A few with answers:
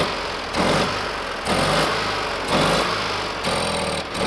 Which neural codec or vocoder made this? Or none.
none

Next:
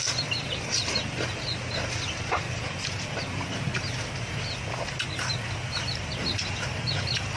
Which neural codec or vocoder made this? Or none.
none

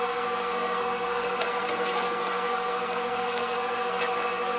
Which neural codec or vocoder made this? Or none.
codec, SNAC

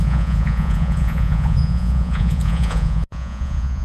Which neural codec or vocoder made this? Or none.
vocoder, Vocos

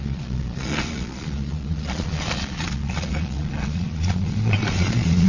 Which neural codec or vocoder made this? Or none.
vocoder, Vocos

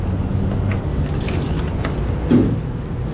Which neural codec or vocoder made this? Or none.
none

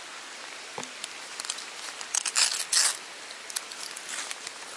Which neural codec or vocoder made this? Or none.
none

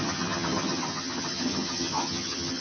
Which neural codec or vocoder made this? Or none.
vocoder, HiFi-GAN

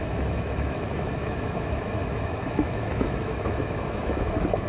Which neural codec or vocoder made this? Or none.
autoencoder, DAC-VAE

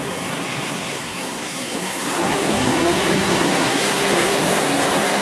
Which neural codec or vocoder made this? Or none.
codec, SNAC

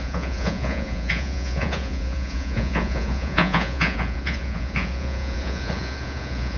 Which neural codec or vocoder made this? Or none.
vocoder, Vocos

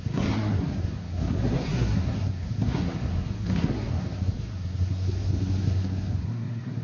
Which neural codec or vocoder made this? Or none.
codec, SNAC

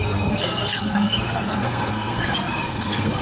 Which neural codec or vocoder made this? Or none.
codec, SNAC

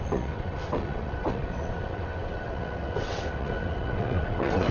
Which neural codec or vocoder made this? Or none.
vocoder, WaveNeXt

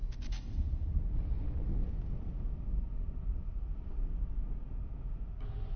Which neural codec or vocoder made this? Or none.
none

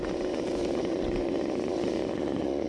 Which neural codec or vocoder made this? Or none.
vocoder, Vocos